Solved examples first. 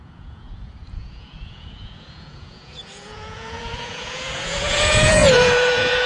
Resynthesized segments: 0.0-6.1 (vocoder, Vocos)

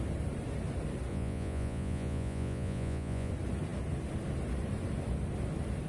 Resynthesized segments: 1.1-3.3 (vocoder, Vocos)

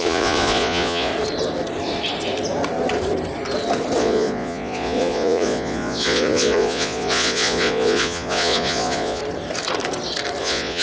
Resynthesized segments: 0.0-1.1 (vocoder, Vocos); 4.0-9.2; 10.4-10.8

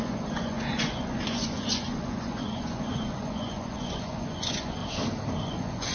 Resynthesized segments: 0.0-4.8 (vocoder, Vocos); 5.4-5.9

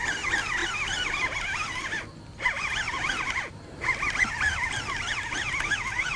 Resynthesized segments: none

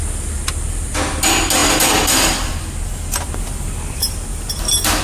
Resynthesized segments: none

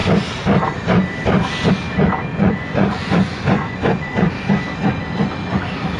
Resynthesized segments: 2.3-4.3 (vocoder, Vocos)

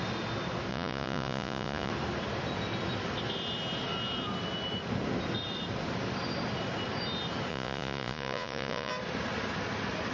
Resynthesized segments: 0.7-1.9 (vocoder, Vocos); 7.5-8.9